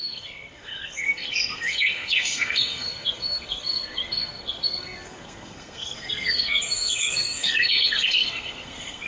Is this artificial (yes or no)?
yes